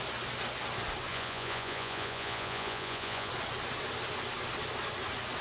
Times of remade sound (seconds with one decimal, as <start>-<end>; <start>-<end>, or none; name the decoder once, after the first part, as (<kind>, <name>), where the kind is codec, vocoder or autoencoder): 1.1-3.3 (vocoder, Vocos)